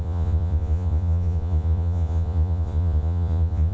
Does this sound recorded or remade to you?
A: remade